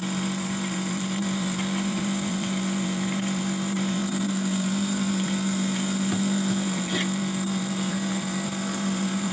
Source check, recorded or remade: remade